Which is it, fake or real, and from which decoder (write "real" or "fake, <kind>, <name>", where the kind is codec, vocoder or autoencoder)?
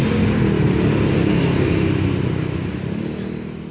real